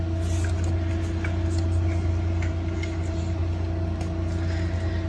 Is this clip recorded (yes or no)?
yes